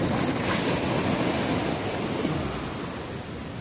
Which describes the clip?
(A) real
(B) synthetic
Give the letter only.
A